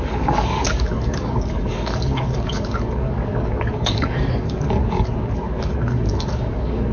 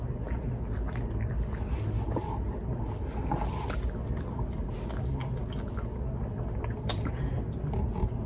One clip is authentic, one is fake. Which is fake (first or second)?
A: first